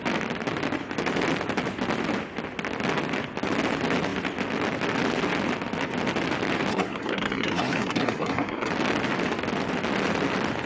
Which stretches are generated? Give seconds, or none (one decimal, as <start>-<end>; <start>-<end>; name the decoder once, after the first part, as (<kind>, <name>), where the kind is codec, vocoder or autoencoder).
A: 6.7-8.7 (codec, SNAC)